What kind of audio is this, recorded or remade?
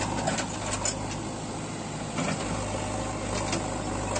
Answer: recorded